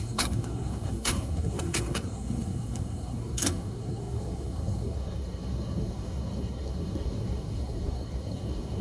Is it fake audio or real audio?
fake